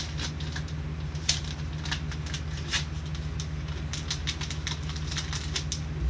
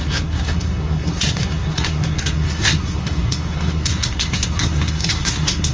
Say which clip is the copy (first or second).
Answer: second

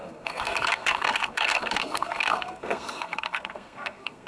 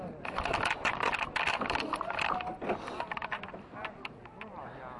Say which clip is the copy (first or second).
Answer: first